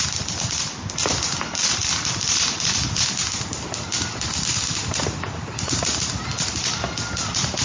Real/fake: real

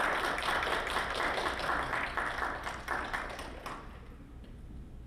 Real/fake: real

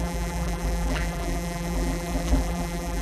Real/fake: fake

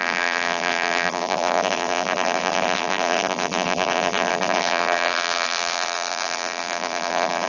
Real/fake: fake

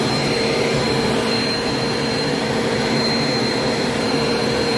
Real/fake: fake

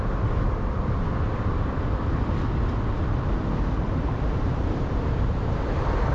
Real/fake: fake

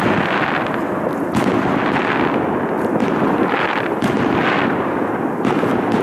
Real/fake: real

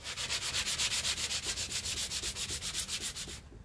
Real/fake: real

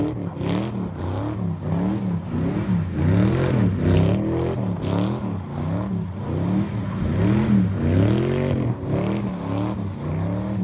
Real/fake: real